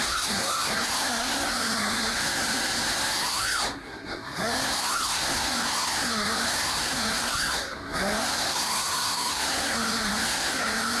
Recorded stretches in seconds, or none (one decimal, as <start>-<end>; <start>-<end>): none